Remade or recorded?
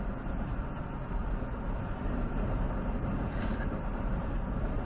recorded